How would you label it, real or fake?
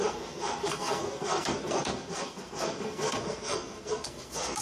fake